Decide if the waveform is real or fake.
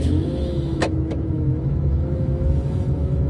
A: fake